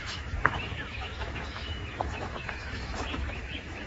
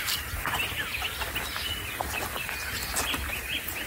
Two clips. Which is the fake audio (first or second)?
first